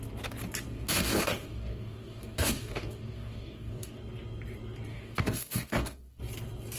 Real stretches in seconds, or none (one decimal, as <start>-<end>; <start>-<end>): 0.0-0.7; 4.0-4.9; 6.2-6.8